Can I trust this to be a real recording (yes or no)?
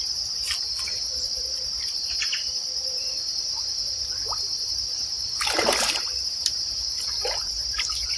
no